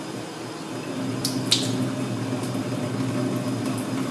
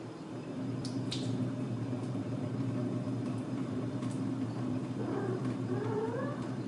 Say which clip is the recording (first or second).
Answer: first